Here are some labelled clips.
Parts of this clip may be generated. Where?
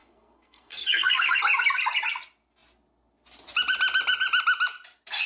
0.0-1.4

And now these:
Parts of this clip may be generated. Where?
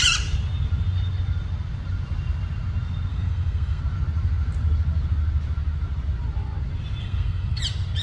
3.1-3.8; 7.0-7.6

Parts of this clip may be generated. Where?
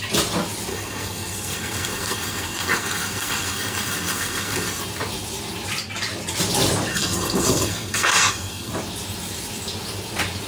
0.7-4.8; 6.9-8.7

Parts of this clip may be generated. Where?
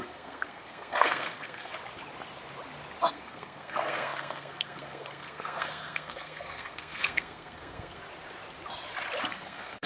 0.0-1.7; 3.1-8.0; 9.3-9.9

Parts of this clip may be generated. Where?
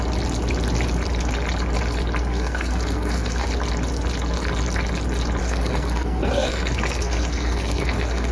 2.3-3.5; 5.4-8.3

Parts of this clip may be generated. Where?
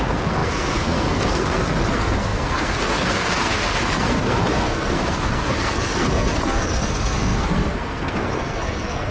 0.0-9.1